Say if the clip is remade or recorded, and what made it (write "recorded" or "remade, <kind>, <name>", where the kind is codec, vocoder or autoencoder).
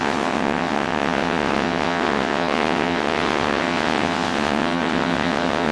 remade, vocoder, WaveNeXt